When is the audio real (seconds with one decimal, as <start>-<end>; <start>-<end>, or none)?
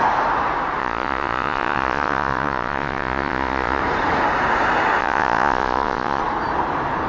0.0-0.8; 3.8-5.0; 6.2-7.1